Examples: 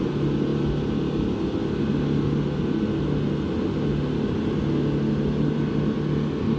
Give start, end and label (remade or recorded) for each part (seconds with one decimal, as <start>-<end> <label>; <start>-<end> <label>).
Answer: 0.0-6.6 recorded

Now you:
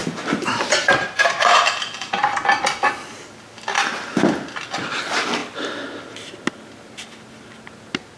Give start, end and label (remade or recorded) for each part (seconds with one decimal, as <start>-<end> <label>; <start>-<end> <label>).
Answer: 0.0-2.2 remade; 2.2-8.2 recorded

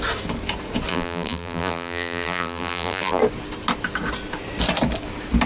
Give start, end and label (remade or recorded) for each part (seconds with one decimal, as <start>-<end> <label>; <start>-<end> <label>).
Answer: 0.0-0.9 recorded; 0.9-3.2 remade; 3.2-5.5 recorded

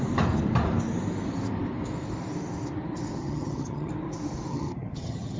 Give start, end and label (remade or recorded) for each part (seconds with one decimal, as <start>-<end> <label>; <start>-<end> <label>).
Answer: 0.0-3.2 recorded; 3.2-3.9 remade; 3.9-4.5 recorded; 4.5-5.4 remade